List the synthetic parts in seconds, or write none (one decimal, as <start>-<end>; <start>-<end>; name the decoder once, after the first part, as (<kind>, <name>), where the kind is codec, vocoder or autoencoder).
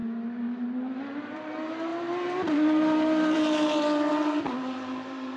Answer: 1.0-5.4 (vocoder, BigVGAN v2)